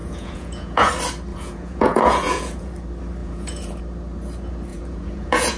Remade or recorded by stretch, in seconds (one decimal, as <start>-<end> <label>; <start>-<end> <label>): 0.0-0.9 remade; 0.9-1.3 recorded; 1.3-2.7 remade; 2.7-3.2 recorded; 3.2-3.8 remade; 3.8-4.7 recorded; 4.7-5.6 remade